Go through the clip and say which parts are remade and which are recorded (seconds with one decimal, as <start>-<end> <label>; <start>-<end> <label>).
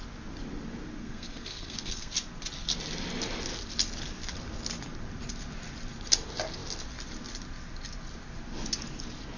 0.0-1.0 recorded; 1.0-2.1 remade; 2.1-9.4 recorded